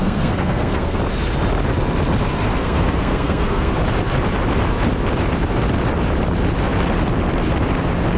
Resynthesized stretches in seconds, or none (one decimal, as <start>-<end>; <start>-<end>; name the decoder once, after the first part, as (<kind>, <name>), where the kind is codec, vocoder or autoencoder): 0.0-1.0 (codec, SNAC); 2.6-3.7